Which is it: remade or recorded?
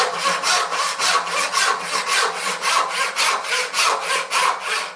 recorded